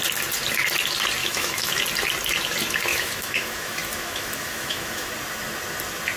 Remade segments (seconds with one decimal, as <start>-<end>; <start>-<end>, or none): 1.2-1.8; 2.9-5.1